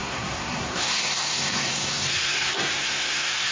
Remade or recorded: remade